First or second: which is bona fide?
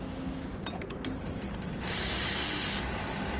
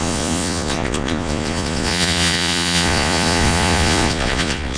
first